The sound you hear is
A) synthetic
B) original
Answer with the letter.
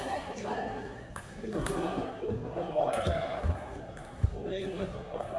A